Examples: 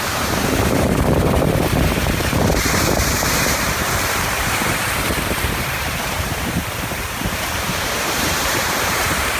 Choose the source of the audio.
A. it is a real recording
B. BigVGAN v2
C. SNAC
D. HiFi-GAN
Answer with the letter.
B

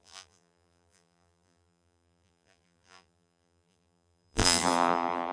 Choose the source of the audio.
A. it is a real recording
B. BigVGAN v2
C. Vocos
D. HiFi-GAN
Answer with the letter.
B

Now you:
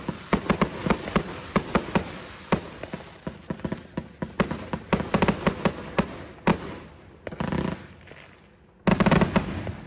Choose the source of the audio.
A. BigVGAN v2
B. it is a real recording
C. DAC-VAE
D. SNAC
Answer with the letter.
B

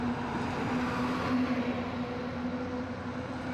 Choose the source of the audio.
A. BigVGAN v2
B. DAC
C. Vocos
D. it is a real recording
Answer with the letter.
D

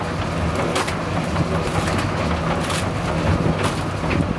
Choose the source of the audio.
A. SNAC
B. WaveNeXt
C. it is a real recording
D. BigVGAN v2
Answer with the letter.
C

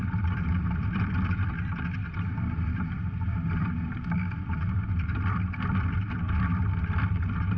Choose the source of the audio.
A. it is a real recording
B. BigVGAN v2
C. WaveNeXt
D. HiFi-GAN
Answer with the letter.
B